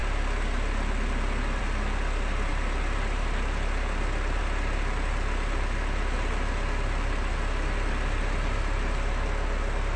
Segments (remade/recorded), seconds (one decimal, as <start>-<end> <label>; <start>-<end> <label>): 0.0-10.0 recorded